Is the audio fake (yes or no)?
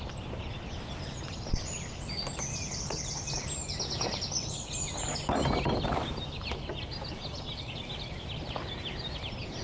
no